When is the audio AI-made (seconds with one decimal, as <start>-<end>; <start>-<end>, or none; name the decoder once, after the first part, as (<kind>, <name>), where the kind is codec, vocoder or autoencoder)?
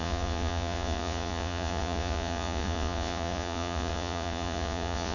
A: 0.0-5.1 (vocoder, Vocos)